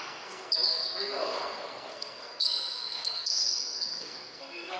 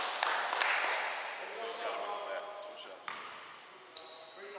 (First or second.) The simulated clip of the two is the first